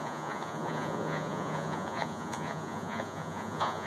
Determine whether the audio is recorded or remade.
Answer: remade